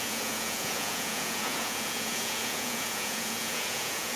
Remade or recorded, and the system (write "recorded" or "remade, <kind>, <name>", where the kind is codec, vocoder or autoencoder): remade, vocoder, Vocos